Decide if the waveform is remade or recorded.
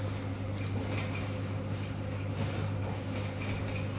recorded